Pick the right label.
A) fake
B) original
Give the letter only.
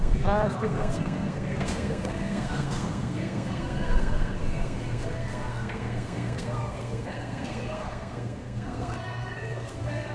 A